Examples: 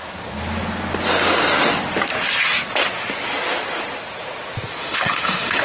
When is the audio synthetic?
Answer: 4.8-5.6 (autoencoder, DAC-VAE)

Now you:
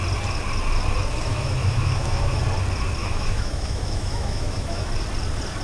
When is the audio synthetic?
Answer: 1.3-2.4 (autoencoder, DAC-VAE); 3.0-4.9

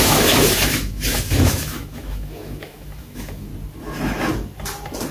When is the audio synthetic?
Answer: 0.0-3.5 (autoencoder, DAC-VAE)

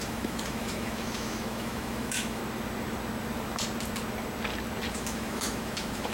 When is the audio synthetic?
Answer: 0.0-2.4 (autoencoder, DAC-VAE); 4.9-6.1